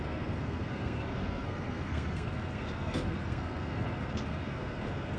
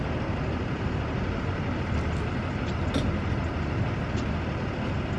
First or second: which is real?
second